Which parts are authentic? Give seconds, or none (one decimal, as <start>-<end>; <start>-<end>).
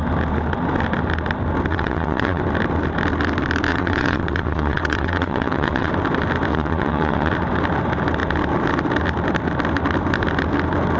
0.0-1.7; 2.4-3.7; 5.9-6.5; 7.3-11.0